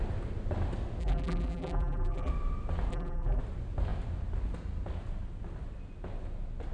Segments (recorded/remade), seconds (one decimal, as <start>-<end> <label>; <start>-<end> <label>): 0.0-1.0 recorded; 1.0-2.3 remade; 2.3-2.9 recorded; 2.9-3.4 remade; 3.4-6.7 recorded